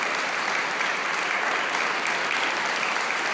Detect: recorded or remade recorded